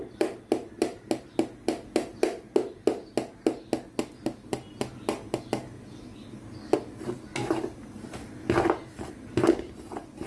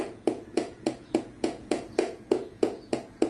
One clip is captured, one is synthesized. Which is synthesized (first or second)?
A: second